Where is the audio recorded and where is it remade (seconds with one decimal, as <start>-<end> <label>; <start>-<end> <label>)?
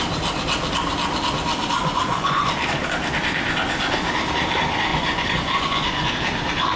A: 0.0-1.8 recorded; 1.8-2.5 remade; 2.5-4.9 recorded; 4.9-6.1 remade; 6.1-6.8 recorded